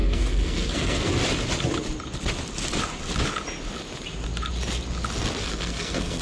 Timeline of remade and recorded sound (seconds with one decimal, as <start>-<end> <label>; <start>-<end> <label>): 0.0-1.1 remade; 1.1-5.4 recorded; 5.4-6.2 remade